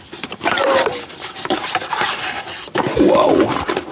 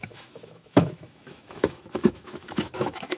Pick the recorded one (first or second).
first